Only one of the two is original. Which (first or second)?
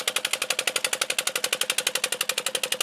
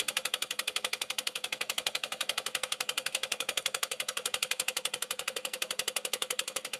first